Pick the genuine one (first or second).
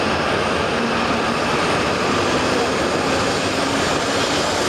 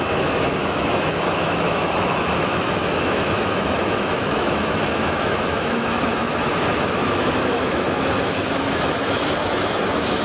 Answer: first